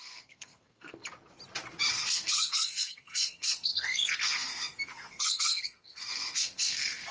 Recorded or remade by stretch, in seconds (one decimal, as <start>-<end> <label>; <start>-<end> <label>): 0.0-1.0 remade; 1.0-1.9 recorded; 1.9-7.1 remade